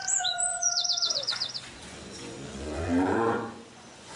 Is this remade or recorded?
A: remade